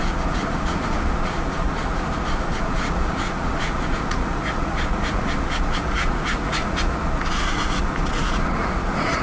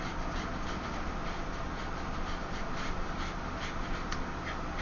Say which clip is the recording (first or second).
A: second